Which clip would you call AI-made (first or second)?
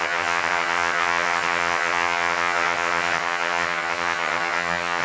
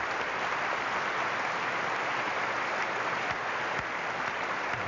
first